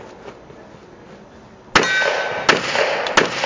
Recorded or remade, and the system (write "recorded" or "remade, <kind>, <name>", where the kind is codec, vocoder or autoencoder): recorded